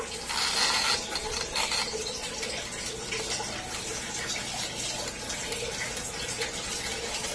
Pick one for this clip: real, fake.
real